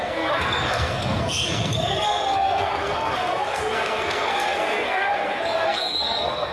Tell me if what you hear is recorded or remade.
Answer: remade